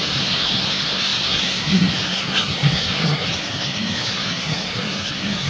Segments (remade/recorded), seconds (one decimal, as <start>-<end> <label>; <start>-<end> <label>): 0.0-5.5 remade